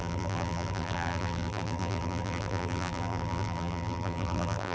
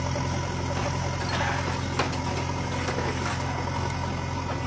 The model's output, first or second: first